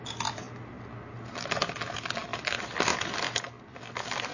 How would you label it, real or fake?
real